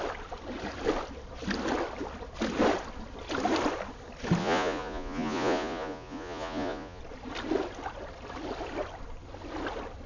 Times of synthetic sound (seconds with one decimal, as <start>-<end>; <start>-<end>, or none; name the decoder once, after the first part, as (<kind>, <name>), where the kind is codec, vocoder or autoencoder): 4.4-7.0 (vocoder, Vocos)